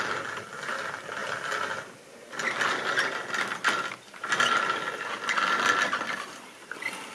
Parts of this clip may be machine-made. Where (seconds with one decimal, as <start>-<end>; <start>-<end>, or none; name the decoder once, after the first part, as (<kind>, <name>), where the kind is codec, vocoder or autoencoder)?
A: none